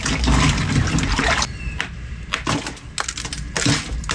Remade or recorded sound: recorded